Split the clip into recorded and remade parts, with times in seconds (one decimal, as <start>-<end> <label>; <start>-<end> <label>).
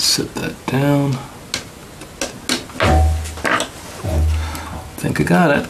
0.0-5.7 recorded